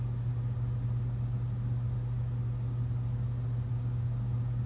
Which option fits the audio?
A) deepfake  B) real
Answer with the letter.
A